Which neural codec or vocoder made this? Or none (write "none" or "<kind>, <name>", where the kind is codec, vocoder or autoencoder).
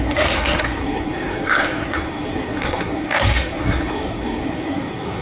codec, SNAC